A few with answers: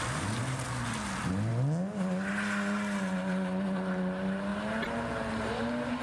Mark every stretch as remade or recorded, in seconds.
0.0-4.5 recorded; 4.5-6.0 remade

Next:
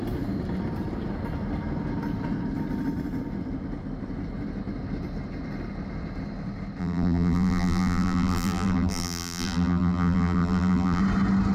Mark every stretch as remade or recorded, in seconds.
0.0-6.8 recorded; 6.8-11.0 remade; 11.0-11.5 recorded

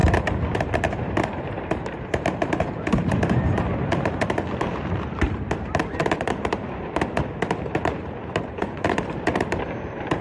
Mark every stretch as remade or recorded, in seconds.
0.0-0.6 recorded; 0.6-10.2 remade

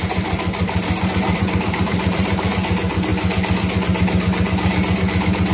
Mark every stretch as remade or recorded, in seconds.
0.0-1.0 recorded; 1.0-3.1 remade; 3.1-5.5 recorded

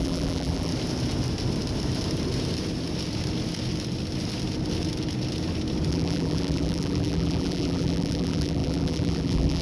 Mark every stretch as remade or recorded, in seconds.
0.0-0.7 remade; 0.7-5.9 recorded; 5.9-9.6 remade

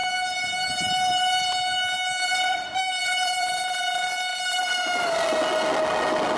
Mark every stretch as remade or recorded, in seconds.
0.0-3.8 remade; 3.8-4.3 recorded; 4.3-5.1 remade; 5.1-6.4 recorded

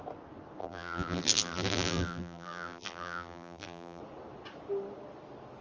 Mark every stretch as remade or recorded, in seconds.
0.0-0.6 recorded; 0.6-4.0 remade; 4.0-5.6 recorded

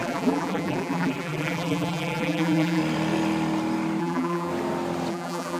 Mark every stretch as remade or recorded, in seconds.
0.0-2.8 remade; 2.8-4.0 recorded; 4.0-4.5 remade; 4.5-5.1 recorded; 5.1-5.6 remade